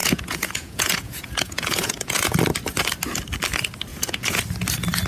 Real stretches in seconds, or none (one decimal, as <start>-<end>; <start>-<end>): 2.4-3.9; 4.4-5.1